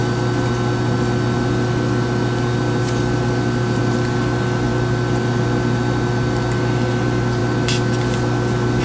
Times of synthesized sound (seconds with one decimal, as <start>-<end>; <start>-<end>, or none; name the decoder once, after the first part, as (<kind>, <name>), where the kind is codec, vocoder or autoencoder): none